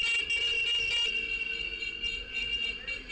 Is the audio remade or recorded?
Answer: recorded